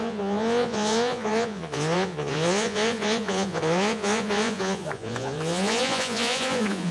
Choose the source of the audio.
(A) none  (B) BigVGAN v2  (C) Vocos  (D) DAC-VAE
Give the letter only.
C